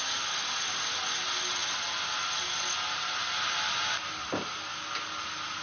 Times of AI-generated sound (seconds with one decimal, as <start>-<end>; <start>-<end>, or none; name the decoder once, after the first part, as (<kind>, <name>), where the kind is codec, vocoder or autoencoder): none